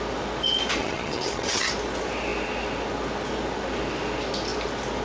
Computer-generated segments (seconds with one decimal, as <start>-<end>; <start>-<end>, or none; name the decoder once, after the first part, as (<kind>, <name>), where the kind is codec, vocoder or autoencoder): 0.8-1.7 (vocoder, HiFi-GAN)